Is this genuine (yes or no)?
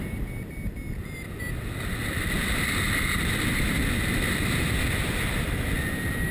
yes